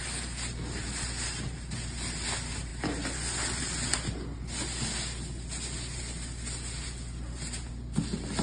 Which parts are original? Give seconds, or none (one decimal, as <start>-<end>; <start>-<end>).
0.0-8.4